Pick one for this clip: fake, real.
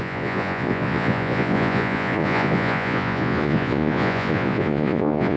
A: fake